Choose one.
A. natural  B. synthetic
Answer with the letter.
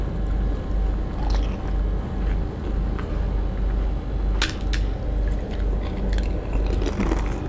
A